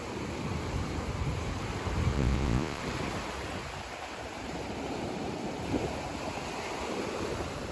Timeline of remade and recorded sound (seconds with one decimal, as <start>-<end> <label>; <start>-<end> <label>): 0.0-2.1 recorded; 2.1-2.8 remade; 2.8-7.7 recorded